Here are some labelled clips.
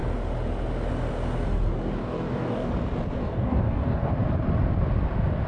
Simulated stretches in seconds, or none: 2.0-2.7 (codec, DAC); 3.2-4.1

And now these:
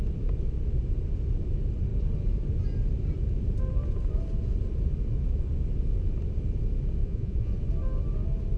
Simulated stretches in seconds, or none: 7.0-7.5 (vocoder, Vocos)

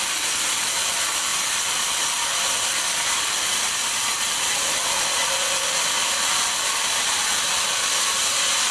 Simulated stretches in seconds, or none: none

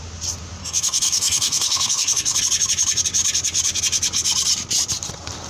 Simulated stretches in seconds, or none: 0.6-2.4 (codec, DAC)

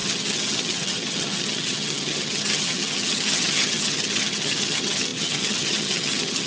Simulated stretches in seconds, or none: 0.0-6.5 (vocoder, HiFi-GAN)

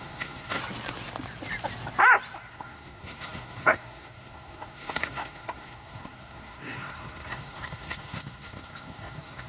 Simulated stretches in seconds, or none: 0.0-0.6 (codec, SNAC); 2.5-9.5